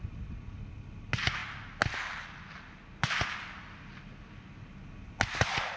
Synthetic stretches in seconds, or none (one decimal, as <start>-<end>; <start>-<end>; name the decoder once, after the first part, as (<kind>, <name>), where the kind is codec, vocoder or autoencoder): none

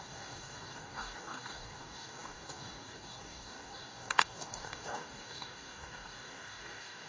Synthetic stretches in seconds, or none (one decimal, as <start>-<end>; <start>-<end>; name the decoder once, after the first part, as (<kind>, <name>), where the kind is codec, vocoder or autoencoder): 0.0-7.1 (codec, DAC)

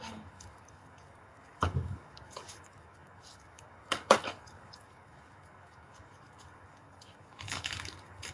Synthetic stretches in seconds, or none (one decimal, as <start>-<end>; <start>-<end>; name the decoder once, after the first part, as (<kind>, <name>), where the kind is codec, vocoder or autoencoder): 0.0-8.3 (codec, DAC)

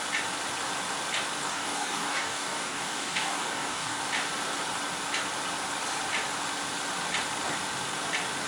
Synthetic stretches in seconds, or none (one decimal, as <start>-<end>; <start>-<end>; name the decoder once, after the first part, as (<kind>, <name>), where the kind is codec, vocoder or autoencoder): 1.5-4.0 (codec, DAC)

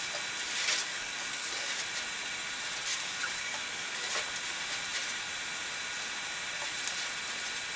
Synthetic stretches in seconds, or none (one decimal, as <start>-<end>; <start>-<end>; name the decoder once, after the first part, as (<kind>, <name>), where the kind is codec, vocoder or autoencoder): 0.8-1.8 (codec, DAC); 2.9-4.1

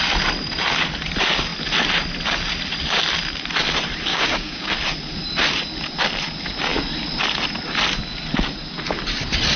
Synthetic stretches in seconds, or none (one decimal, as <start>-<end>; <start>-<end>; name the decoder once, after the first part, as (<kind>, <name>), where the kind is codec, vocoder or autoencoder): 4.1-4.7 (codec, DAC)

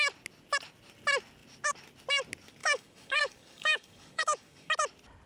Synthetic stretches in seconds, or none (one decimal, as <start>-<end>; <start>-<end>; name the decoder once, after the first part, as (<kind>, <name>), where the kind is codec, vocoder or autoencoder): 2.6-4.7 (codec, DAC)